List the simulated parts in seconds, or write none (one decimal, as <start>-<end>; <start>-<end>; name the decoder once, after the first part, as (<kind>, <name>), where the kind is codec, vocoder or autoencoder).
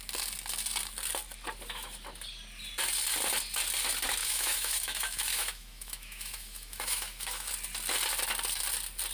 4.2-7.5 (autoencoder, DAC-VAE)